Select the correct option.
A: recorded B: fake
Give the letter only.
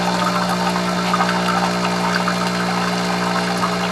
A